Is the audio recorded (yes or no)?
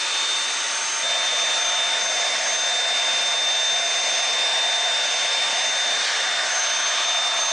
yes